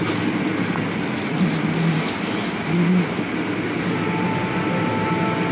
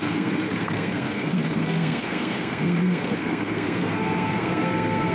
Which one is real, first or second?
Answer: first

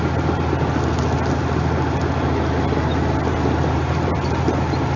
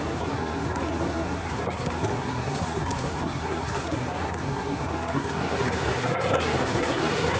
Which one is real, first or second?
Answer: first